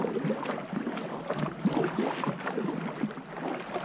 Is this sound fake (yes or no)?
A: no